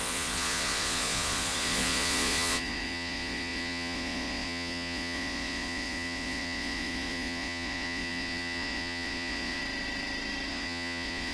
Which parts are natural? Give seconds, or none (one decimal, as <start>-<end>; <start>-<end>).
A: 9.6-10.5